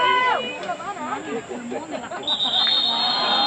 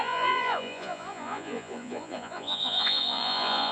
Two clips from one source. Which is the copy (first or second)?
second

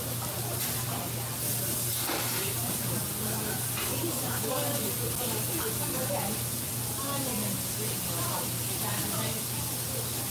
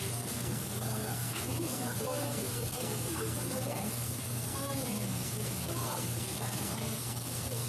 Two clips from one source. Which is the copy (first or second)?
second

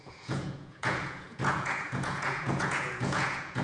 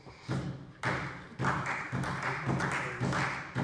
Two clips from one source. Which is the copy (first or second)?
first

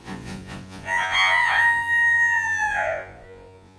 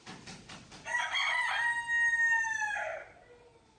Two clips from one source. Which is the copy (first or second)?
first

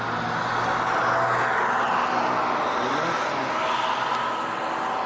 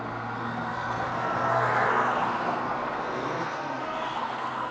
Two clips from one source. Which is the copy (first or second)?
second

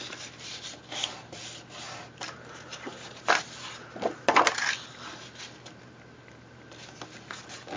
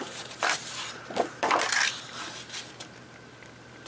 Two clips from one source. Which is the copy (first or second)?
second